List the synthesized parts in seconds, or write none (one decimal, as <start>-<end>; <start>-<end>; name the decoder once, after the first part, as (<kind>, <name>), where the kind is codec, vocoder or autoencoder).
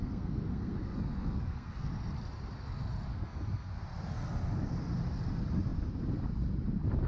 0.0-1.9 (codec, SNAC); 3.1-3.7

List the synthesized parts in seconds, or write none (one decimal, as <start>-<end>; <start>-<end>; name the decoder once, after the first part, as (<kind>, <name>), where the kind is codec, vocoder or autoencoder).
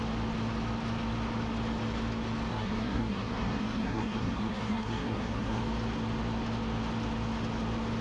2.5-5.6 (codec, SNAC)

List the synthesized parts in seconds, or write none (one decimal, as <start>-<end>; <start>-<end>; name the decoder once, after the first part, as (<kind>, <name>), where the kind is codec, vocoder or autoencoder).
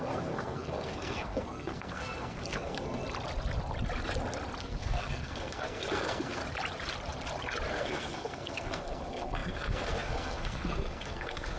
0.0-3.0 (codec, SNAC); 4.6-6.4; 7.7-11.6